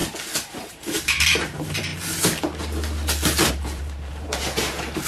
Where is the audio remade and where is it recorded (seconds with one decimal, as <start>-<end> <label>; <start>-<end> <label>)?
0.0-0.6 recorded; 0.6-1.9 remade; 1.9-3.5 recorded; 3.5-5.1 remade